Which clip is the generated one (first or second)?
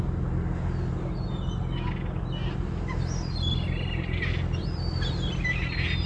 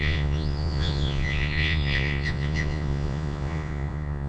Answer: second